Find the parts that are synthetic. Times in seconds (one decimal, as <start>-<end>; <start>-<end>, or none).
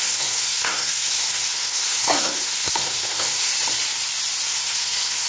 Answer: 0.0-3.5; 4.5-5.3